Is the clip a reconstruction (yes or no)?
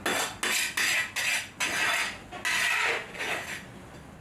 no